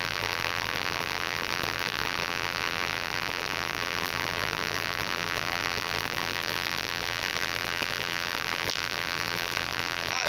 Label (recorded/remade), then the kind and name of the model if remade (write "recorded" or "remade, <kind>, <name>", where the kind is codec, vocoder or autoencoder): remade, vocoder, BigVGAN v2